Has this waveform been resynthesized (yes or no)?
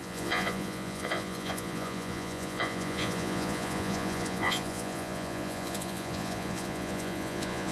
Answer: yes